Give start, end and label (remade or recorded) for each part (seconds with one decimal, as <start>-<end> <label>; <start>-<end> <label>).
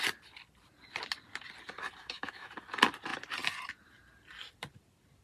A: 0.0-2.0 recorded; 2.0-2.5 remade; 2.5-5.2 recorded